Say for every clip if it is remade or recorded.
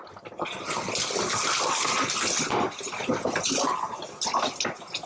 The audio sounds recorded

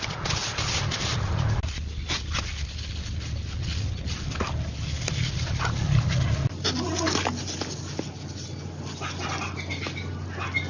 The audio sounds recorded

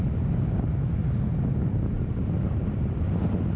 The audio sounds recorded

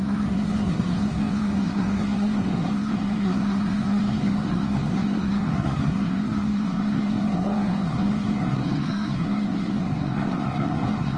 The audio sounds remade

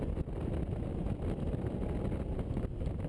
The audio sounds recorded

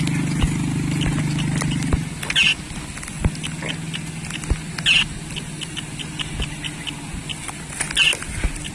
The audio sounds recorded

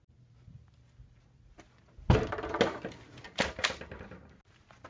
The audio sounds recorded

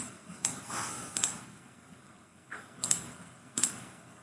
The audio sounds remade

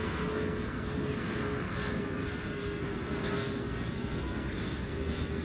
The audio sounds remade